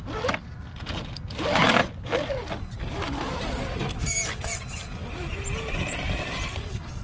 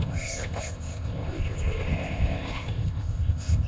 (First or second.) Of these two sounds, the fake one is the second